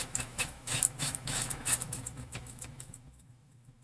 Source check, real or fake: fake